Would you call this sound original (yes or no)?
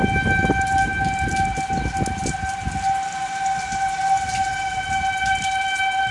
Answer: yes